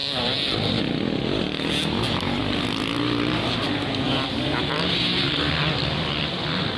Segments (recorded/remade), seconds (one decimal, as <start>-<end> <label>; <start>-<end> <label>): 0.0-0.8 remade; 0.8-2.4 recorded; 2.4-6.8 remade